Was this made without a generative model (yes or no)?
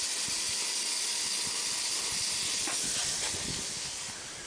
yes